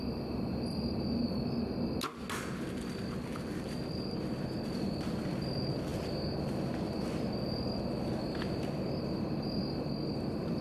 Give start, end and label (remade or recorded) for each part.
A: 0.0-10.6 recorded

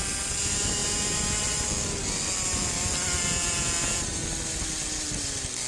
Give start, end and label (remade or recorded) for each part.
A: 0.0-5.7 recorded

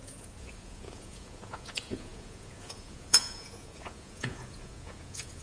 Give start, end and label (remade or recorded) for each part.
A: 0.0-5.4 remade

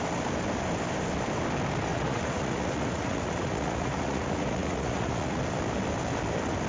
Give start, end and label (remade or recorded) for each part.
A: 0.0-1.9 recorded; 1.9-5.4 remade; 5.4-6.7 recorded